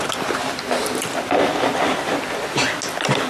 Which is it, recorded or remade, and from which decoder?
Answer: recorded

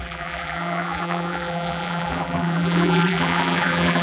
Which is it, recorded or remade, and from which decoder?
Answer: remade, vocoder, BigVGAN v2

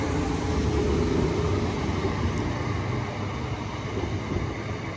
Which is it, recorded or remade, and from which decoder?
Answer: recorded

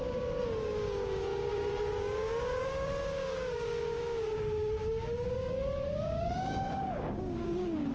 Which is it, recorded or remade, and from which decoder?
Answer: remade, codec, DAC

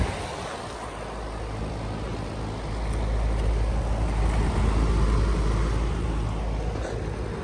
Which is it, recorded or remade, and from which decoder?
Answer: recorded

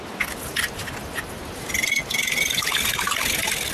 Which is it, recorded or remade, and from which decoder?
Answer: recorded